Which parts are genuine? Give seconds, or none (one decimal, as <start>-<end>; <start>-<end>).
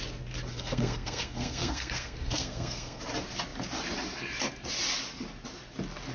0.0-0.5; 3.0-6.1